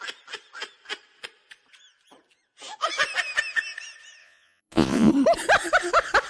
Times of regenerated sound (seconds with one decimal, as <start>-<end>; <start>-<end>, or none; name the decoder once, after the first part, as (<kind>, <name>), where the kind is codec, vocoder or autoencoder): 4.2-5.1 (vocoder, Vocos)